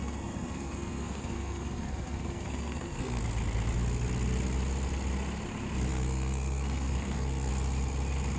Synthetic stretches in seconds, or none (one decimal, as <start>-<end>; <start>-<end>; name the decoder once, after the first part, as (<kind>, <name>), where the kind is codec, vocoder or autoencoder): 0.0-3.2 (codec, SNAC); 5.9-7.5